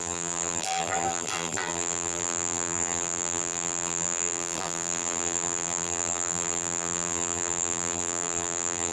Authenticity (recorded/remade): remade